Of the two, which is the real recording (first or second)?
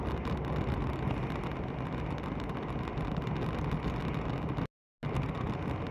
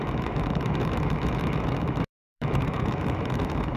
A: first